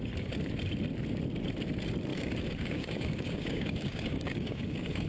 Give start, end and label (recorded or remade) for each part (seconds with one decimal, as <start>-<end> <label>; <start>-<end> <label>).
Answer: 0.0-2.1 recorded; 2.1-5.1 remade